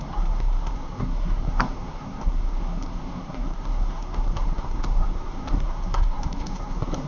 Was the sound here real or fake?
fake